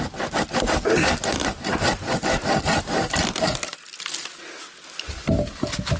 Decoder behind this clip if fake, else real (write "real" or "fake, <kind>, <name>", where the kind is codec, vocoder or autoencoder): real